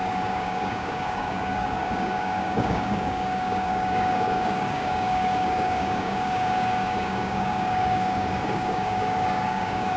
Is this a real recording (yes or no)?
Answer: no